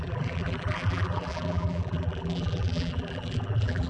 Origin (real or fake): fake